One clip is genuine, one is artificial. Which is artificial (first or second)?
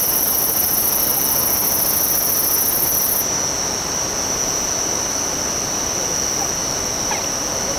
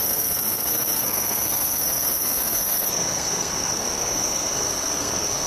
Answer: second